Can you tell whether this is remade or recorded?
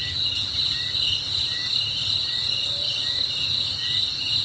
recorded